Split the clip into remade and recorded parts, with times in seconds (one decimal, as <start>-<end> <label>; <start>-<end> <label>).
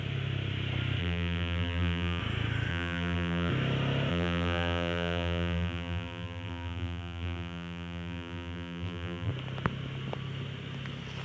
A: 0.0-1.0 recorded; 1.0-2.2 remade; 2.2-2.7 recorded; 2.7-3.5 remade; 3.5-4.1 recorded; 4.1-9.3 remade; 9.3-11.2 recorded